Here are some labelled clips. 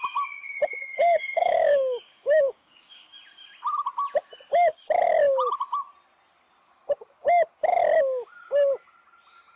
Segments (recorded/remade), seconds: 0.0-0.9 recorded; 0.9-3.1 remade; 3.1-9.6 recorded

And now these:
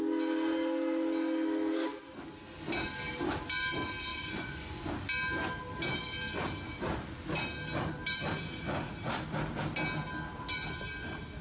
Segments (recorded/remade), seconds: 0.0-4.1 recorded; 4.1-4.9 remade; 4.9-11.4 recorded